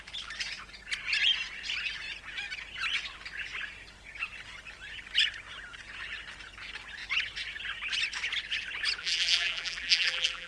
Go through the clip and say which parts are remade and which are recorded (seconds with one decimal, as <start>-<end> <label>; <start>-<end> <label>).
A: 0.0-9.0 recorded; 9.0-10.5 remade